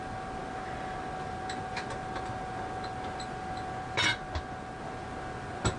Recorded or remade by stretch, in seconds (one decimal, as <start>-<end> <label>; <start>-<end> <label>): 0.0-5.8 recorded